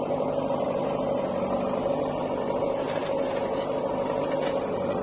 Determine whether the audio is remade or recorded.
recorded